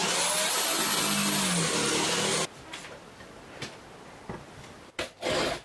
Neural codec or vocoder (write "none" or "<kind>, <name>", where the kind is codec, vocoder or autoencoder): none